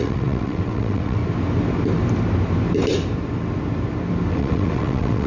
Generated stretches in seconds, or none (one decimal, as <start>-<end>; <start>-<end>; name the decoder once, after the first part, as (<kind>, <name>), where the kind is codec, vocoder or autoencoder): 0.0-1.2 (vocoder, WaveNeXt); 4.3-5.3